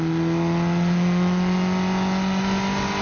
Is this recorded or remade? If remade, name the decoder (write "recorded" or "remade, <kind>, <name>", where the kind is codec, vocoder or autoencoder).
recorded